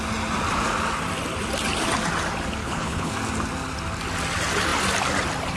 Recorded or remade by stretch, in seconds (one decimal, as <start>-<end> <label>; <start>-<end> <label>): 0.0-2.6 recorded; 2.6-3.1 remade; 3.1-5.6 recorded